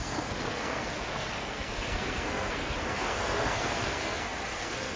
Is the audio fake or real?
fake